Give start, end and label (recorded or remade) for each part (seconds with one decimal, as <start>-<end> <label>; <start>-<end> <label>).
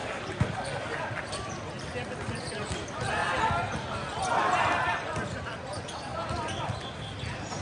0.0-1.0 remade; 1.0-7.6 recorded